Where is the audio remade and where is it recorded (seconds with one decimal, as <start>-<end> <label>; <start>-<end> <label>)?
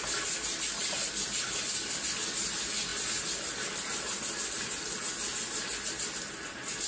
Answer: 0.0-6.9 recorded